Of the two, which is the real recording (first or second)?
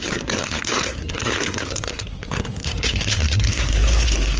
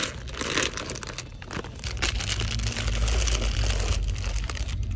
second